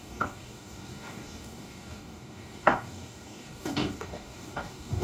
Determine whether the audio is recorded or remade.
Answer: remade